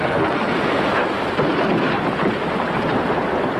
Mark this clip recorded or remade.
remade